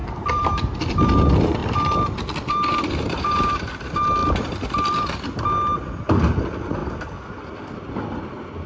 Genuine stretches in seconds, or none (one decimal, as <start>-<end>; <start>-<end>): 0.6-1.6; 3.6-4.2; 5.4-8.7